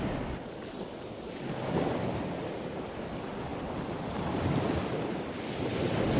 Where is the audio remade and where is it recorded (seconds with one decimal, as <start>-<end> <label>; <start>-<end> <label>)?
0.0-6.2 recorded